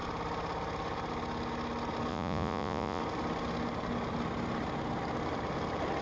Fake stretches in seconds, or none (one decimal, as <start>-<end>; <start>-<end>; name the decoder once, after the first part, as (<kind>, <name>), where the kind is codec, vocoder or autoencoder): 2.1-3.0 (vocoder, Vocos)